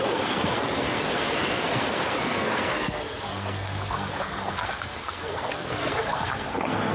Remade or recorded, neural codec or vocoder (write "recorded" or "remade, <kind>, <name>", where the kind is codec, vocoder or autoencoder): remade, codec, SNAC